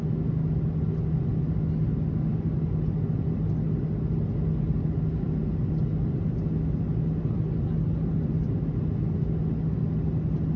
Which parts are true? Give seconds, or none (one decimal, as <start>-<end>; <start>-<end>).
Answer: 0.0-10.6